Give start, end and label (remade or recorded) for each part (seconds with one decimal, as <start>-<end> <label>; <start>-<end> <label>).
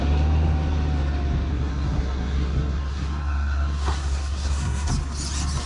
0.0-1.5 recorded; 1.5-4.9 remade; 4.9-5.7 recorded